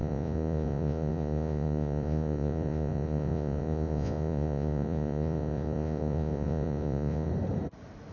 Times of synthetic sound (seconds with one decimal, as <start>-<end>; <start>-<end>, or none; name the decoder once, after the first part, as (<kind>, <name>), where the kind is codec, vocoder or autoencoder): 0.0-7.3 (vocoder, Vocos)